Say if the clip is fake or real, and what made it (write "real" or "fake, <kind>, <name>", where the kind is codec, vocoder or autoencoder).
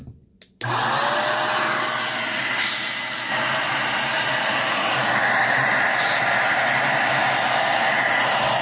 real